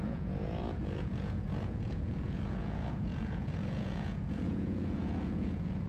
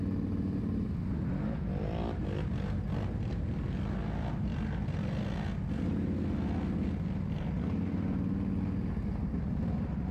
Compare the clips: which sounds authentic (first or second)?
second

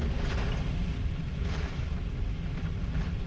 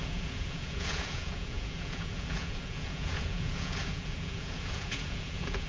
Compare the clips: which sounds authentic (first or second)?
first